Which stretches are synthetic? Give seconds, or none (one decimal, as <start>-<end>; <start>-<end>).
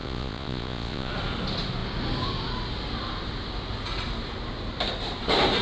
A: 0.0-1.1